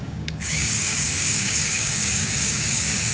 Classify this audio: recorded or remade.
remade